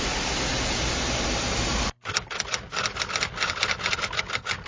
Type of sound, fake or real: real